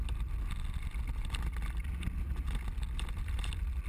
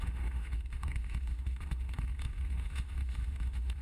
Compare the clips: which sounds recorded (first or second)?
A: first